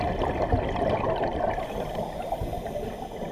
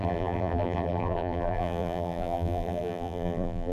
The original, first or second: first